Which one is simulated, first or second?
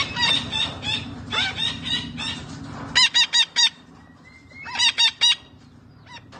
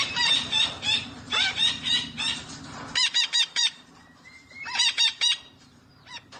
second